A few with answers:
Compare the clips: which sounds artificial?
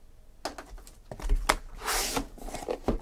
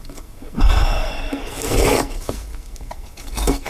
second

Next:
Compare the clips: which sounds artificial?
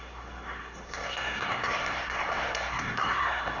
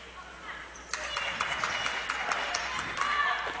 first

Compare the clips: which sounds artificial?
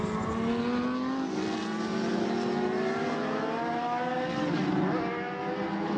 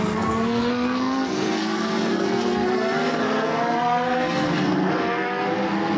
second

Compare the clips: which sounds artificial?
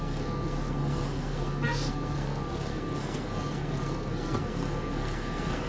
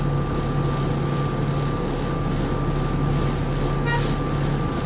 first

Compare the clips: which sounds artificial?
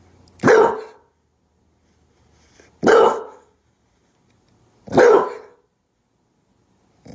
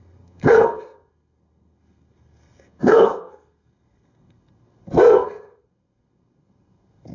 second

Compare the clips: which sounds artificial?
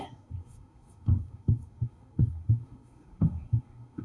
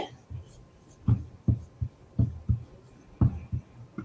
first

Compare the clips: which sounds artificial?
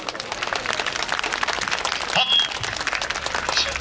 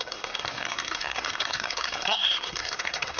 second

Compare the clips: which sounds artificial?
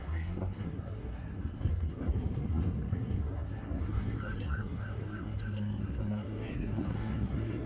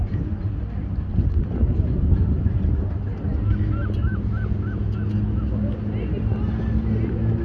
first